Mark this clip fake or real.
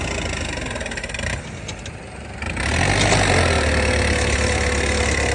real